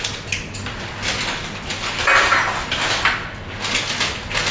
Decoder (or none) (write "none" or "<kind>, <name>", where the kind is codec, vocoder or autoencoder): none